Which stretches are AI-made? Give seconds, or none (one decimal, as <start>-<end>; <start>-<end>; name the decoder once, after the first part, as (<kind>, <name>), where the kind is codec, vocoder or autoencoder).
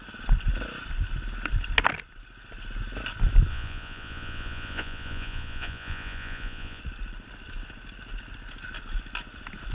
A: 3.5-6.8 (vocoder, Vocos)